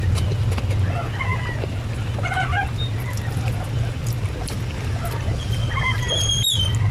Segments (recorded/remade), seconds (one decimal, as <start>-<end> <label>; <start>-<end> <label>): 0.0-1.3 recorded; 1.3-5.4 remade; 5.4-6.9 recorded